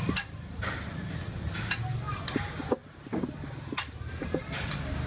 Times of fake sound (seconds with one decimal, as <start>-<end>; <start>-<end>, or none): none